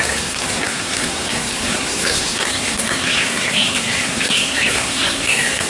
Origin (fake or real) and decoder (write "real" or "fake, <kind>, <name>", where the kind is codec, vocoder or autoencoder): fake, codec, SNAC